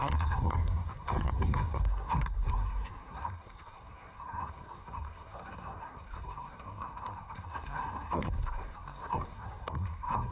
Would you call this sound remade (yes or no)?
yes